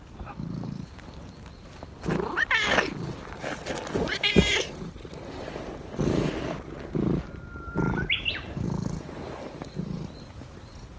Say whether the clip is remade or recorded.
recorded